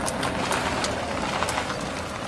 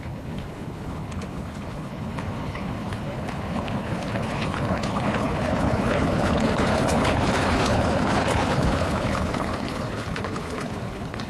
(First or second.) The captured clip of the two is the first